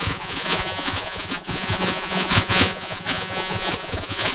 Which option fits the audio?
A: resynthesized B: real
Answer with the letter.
A